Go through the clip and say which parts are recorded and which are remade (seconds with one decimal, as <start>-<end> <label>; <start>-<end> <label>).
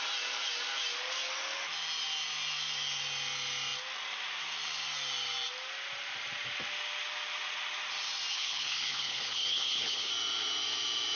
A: 0.0-8.3 recorded; 8.3-10.1 remade; 10.1-11.2 recorded